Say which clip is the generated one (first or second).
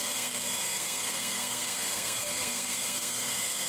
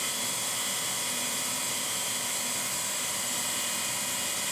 first